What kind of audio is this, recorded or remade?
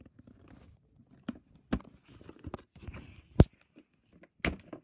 recorded